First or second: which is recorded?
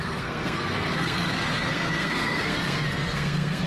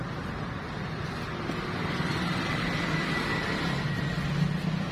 second